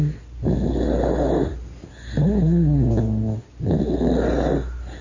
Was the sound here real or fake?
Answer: real